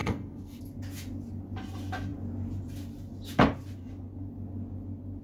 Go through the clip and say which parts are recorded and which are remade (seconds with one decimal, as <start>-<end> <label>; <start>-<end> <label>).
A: 0.0-0.6 remade; 0.6-5.2 recorded